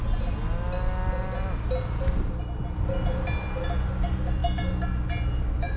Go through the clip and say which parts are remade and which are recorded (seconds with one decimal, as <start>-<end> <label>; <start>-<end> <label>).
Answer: 0.0-5.8 recorded